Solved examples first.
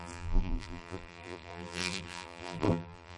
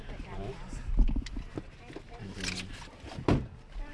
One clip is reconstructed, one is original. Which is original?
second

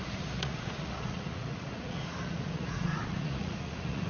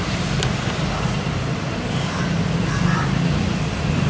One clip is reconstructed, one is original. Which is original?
second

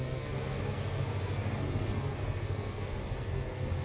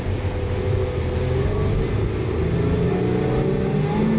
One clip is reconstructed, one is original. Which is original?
second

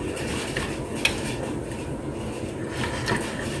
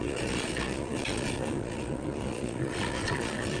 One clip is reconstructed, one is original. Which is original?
first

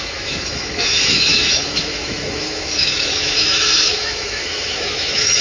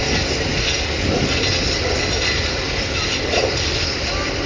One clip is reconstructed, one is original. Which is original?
second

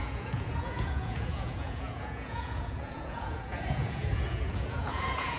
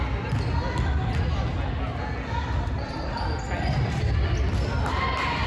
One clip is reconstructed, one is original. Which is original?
second